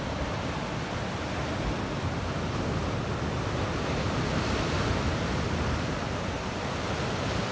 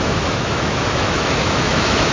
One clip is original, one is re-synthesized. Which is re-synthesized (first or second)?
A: second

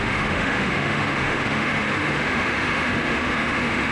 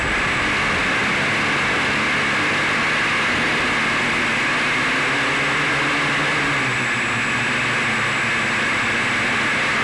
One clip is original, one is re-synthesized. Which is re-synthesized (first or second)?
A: first